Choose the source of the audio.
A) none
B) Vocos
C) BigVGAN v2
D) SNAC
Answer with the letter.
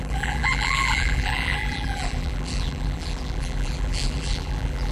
C